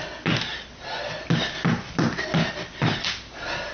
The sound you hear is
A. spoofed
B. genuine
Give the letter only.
B